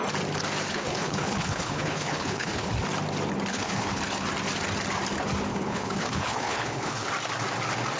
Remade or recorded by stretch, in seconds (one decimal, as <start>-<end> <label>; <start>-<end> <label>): 0.0-0.7 recorded; 0.7-2.7 remade; 2.7-3.5 recorded; 3.5-4.0 remade; 4.0-5.5 recorded; 5.5-7.1 remade; 7.1-8.0 recorded